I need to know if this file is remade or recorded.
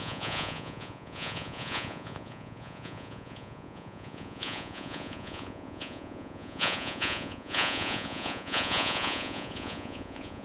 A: remade